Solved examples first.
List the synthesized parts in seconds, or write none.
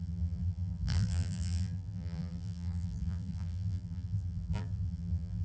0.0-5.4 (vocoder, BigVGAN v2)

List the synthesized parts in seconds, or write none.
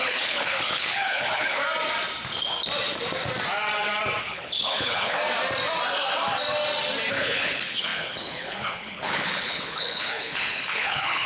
0.0-1.6 (codec, HILCodec); 4.2-5.2; 7.1-11.3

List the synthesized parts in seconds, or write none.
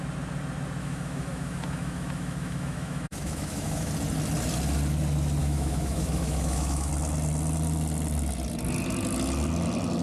0.8-3.9 (autoencoder, DAC-VAE); 5.4-6.9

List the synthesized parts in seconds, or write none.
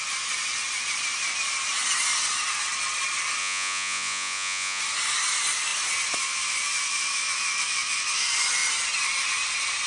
3.4-4.8 (vocoder, Vocos)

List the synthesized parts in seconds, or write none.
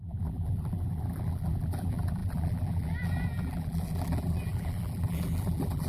0.0-5.9 (vocoder, BigVGAN v2)